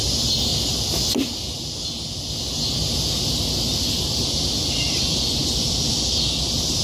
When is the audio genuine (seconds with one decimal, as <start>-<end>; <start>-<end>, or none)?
0.5-3.6